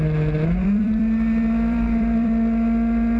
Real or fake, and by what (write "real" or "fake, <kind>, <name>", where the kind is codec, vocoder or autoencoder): fake, vocoder, BigVGAN v2